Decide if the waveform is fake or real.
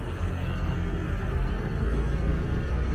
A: fake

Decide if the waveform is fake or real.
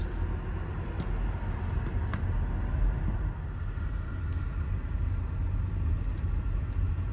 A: real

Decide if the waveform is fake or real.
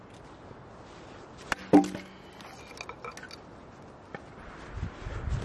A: real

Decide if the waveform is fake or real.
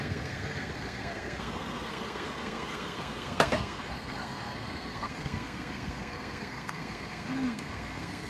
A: fake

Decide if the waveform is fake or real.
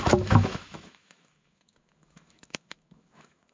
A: fake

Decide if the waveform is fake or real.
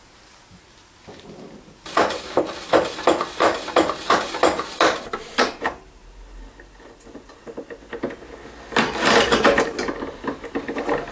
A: real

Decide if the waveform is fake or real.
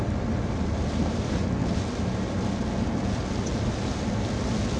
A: real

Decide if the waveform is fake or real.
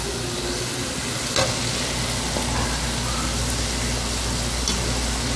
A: real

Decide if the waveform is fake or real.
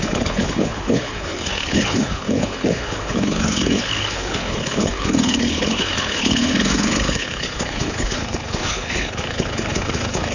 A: fake